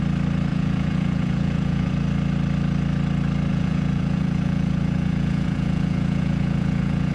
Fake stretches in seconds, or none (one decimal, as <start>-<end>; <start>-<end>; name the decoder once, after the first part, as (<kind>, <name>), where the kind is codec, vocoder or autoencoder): 0.5-1.9 (vocoder, Vocos); 3.5-7.1